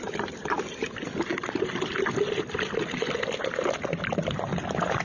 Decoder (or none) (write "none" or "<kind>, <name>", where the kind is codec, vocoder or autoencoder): none